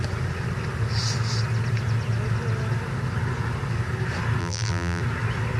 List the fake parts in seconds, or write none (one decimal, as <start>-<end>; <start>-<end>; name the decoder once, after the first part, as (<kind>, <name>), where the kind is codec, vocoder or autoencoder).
4.4-5.0 (vocoder, BigVGAN v2)